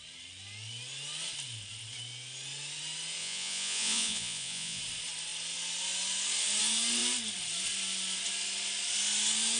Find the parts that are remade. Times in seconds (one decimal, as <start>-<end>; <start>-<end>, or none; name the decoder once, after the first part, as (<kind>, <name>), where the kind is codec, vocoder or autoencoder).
3.2-4.8 (vocoder, Vocos)